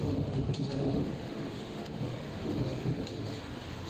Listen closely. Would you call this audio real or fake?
fake